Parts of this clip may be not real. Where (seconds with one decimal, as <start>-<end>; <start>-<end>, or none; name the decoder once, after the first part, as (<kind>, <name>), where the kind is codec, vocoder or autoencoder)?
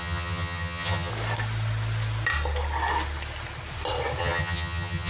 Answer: 0.0-1.1 (vocoder, HiFi-GAN); 4.2-5.1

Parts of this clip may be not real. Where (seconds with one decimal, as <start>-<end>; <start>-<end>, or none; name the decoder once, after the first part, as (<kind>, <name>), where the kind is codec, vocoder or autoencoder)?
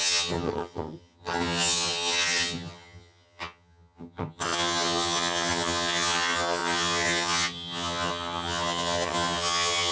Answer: 0.0-9.9 (vocoder, HiFi-GAN)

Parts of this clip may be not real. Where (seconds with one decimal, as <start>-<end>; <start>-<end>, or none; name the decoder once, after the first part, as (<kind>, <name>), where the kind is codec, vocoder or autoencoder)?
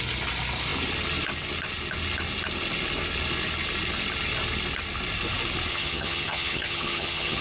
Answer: 5.7-7.4 (vocoder, HiFi-GAN)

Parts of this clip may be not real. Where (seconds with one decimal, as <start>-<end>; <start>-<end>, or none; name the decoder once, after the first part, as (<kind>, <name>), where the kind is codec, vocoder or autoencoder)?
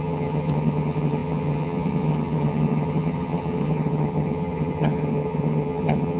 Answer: 0.0-6.2 (vocoder, HiFi-GAN)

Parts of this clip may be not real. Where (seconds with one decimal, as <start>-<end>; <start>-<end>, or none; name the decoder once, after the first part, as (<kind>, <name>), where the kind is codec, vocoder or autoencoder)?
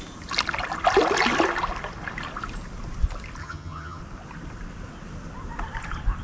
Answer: 3.4-4.0 (vocoder, HiFi-GAN)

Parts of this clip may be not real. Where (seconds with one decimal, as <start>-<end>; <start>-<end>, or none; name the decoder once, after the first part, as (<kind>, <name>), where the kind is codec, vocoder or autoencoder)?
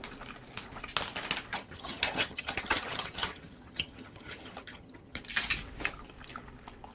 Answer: 1.5-5.2 (vocoder, HiFi-GAN)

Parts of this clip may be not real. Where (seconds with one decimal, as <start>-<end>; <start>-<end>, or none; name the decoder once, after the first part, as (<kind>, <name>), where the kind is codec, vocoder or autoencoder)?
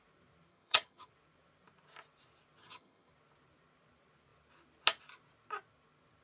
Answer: 0.5-1.1 (vocoder, HiFi-GAN); 2.6-3.1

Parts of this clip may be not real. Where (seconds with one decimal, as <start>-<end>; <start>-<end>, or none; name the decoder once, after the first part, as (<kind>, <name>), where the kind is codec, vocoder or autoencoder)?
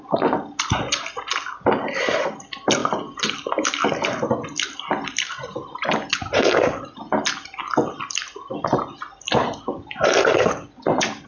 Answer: none